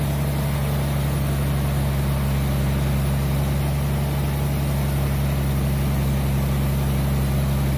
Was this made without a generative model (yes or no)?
yes